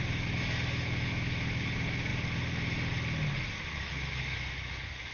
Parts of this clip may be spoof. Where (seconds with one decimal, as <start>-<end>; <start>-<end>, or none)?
0.0-2.1; 3.8-5.1